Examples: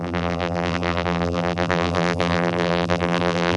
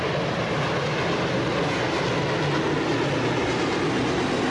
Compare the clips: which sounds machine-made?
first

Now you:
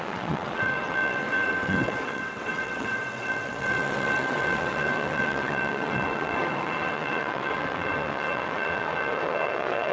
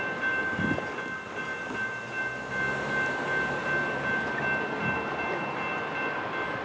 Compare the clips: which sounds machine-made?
first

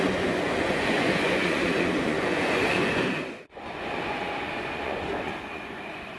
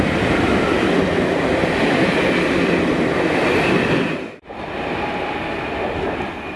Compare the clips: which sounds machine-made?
first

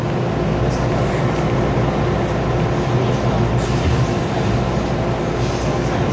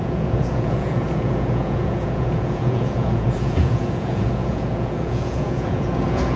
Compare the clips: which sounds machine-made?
second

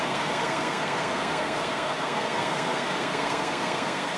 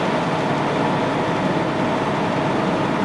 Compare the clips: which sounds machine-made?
first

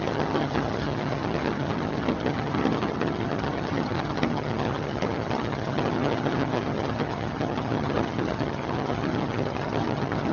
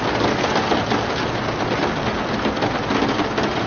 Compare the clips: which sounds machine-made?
first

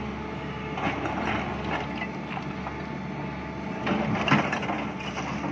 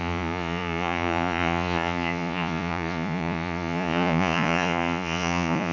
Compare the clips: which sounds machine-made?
second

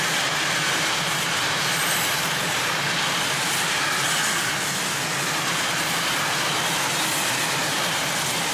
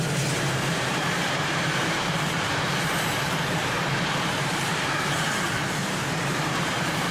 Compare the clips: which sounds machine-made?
second